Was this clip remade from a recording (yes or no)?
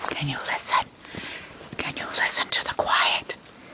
no